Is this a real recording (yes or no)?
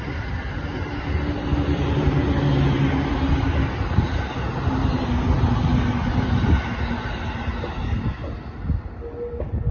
yes